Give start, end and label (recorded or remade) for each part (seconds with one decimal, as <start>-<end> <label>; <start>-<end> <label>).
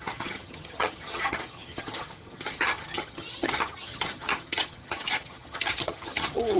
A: 0.0-6.6 remade